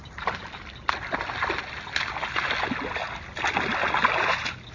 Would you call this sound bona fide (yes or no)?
yes